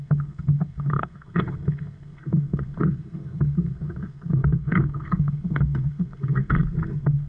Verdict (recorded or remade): remade